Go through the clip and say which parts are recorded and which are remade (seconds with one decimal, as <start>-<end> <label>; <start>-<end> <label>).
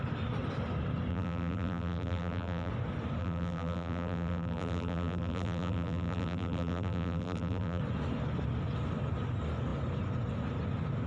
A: 0.0-1.1 recorded; 1.1-2.7 remade; 2.7-3.2 recorded; 3.2-7.8 remade; 7.8-11.1 recorded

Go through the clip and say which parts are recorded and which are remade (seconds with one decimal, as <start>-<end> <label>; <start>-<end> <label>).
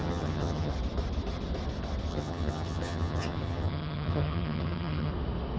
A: 0.0-0.7 remade; 0.7-2.1 recorded; 2.1-5.1 remade; 5.1-5.6 recorded